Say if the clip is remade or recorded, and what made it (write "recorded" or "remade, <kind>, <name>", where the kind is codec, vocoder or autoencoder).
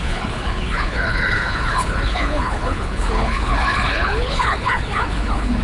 remade, codec, HILCodec